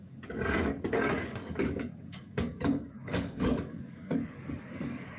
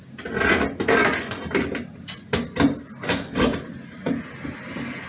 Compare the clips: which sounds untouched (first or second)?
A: second